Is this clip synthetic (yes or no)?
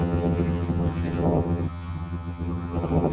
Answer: yes